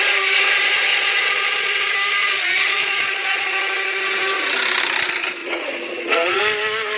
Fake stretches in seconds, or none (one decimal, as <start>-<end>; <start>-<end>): 0.9-1.9; 2.3-3.5; 5.4-6.4